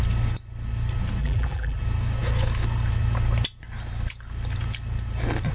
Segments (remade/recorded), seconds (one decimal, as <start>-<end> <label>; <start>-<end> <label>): 0.0-1.2 recorded; 1.2-1.8 remade; 1.8-5.5 recorded